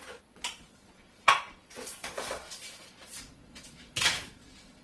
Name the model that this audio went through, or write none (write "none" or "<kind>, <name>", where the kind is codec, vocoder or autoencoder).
vocoder, Vocos